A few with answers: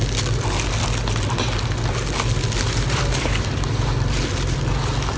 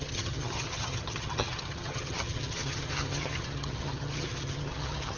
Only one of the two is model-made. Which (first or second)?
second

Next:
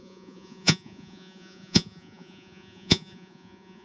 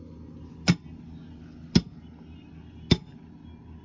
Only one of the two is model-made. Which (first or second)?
first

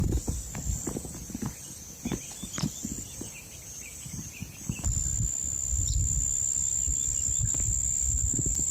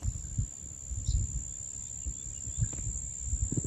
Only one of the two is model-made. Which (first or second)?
first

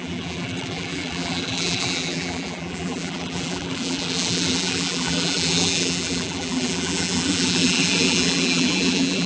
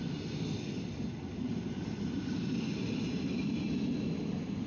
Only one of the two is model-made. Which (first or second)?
first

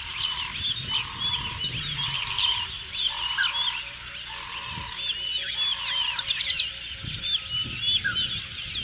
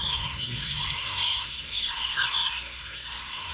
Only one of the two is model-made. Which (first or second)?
second